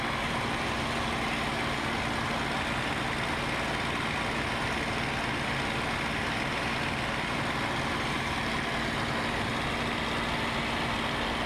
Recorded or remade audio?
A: recorded